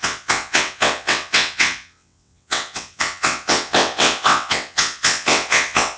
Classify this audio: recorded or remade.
remade